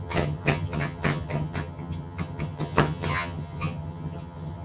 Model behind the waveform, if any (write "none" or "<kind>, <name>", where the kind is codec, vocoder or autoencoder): vocoder, HiFi-GAN